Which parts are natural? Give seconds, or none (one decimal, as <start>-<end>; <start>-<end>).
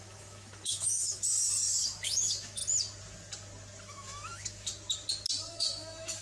1.3-1.8; 2.6-3.8; 4.7-5.5